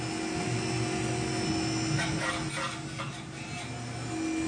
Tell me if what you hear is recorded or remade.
recorded